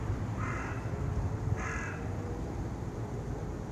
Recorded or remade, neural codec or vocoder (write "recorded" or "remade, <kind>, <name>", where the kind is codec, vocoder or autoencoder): remade, vocoder, BigVGAN v2